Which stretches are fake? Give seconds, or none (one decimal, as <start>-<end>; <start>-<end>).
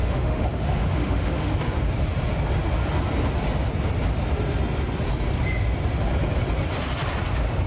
0.0-1.5